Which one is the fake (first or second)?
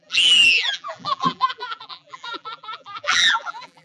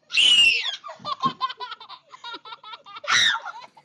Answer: first